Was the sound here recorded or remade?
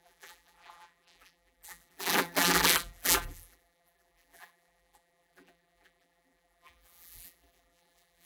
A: remade